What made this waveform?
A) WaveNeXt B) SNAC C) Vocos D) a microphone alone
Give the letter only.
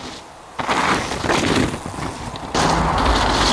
D